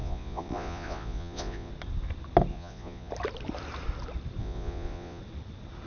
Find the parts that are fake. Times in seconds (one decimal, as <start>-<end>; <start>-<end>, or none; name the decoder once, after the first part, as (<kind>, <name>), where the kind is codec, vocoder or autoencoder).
0.0-1.7 (vocoder, Vocos); 2.5-3.1; 4.4-5.2